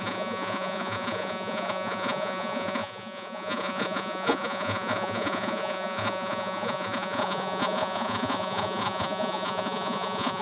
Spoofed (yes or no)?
yes